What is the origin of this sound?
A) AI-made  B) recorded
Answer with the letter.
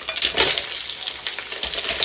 B